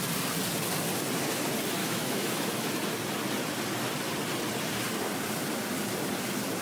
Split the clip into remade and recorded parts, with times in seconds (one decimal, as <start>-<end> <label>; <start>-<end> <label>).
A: 0.0-1.8 recorded; 1.8-2.7 remade; 2.7-6.6 recorded